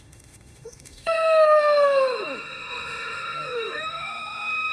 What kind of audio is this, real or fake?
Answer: fake